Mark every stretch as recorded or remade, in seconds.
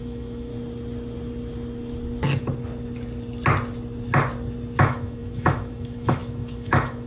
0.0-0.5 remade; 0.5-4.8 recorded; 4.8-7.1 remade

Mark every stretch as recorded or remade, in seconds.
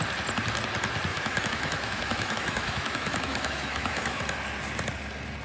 0.0-1.1 recorded; 1.1-4.2 remade; 4.2-5.4 recorded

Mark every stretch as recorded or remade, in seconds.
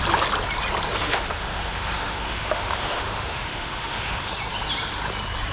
0.0-1.0 recorded; 1.0-4.3 remade; 4.3-5.5 recorded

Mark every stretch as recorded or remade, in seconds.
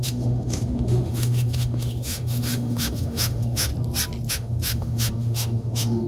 0.0-3.7 remade; 3.7-4.3 recorded; 4.3-6.1 remade